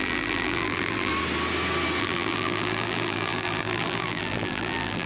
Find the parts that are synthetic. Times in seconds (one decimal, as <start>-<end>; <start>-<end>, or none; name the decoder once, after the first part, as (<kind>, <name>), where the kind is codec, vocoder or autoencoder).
0.0-1.1 (vocoder, BigVGAN v2); 2.0-5.1